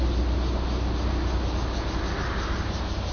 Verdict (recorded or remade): recorded